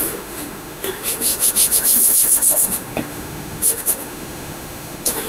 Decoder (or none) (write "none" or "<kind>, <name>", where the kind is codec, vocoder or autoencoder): autoencoder, DAC-VAE